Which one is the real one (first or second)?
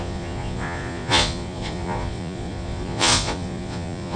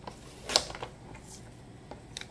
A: second